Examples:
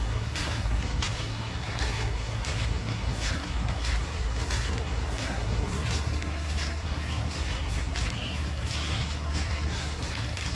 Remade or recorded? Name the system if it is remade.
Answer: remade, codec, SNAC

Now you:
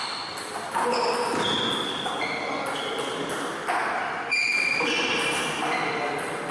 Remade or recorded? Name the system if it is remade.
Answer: recorded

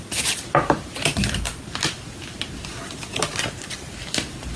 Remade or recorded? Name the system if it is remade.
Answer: remade, vocoder, BigVGAN v2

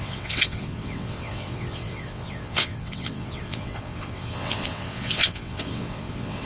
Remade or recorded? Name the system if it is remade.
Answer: remade, vocoder, WaveNeXt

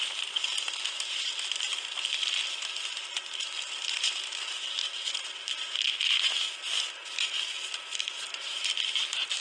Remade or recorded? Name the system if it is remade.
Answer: recorded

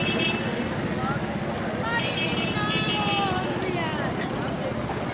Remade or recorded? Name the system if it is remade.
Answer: recorded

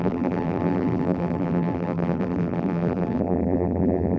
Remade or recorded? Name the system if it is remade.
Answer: remade, vocoder, BigVGAN v2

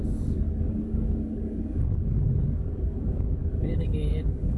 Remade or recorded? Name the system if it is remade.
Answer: remade, codec, DAC